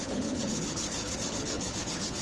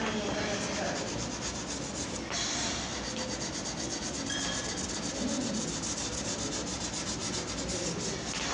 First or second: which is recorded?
second